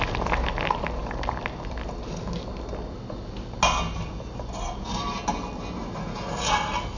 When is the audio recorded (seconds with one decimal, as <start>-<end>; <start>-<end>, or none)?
0.0-7.0

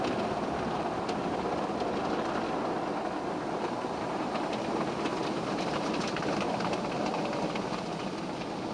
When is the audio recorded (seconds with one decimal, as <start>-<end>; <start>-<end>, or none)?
0.0-5.1; 7.2-8.7

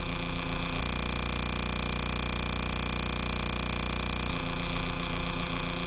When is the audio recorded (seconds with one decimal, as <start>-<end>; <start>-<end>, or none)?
0.8-4.3

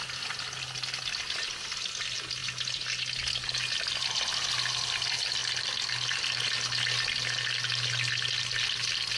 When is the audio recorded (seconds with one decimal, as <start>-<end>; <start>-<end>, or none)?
0.0-9.2